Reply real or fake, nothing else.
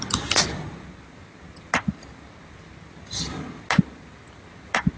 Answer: real